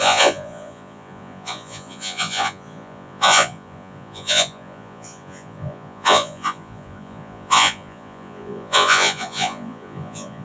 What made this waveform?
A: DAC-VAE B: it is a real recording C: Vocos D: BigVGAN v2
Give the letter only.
C